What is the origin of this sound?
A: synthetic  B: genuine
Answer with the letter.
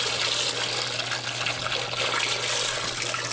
B